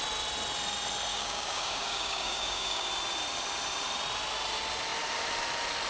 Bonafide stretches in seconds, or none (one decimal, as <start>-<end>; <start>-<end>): 0.0-1.1; 2.9-5.9